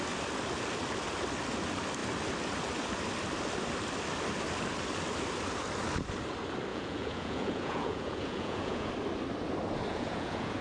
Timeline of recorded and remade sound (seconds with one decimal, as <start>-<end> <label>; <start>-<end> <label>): 0.0-6.7 recorded; 6.7-8.9 remade; 8.9-9.9 recorded; 9.9-10.6 remade